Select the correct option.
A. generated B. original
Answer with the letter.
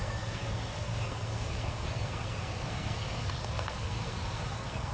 A